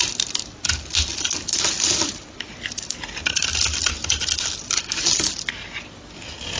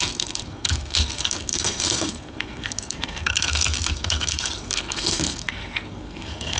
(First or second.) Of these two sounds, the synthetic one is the second